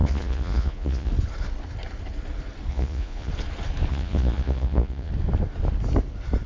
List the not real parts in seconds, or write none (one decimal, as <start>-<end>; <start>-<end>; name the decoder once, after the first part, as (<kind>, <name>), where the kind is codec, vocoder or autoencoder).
0.0-1.1 (vocoder, Vocos); 2.7-3.3; 3.9-5.1